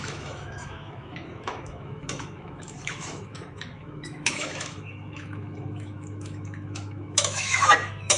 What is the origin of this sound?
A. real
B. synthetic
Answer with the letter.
B